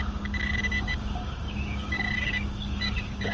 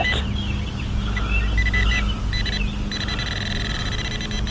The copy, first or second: first